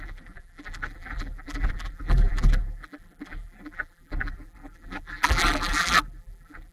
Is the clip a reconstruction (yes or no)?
yes